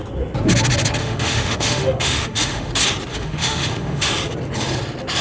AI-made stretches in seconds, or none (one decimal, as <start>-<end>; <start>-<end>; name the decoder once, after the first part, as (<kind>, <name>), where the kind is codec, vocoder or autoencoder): 1.0-2.7 (autoencoder, DAC-VAE); 3.1-4.1